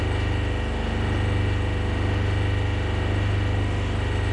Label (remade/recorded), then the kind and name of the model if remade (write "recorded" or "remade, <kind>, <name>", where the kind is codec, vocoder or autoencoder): recorded